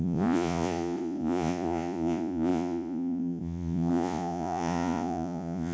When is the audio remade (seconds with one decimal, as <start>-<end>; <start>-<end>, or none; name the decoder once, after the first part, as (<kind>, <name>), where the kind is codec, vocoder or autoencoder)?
0.0-5.7 (vocoder, Vocos)